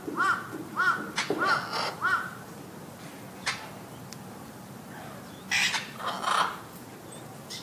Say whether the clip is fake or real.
real